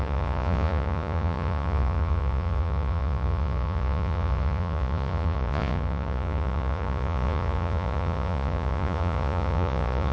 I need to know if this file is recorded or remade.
remade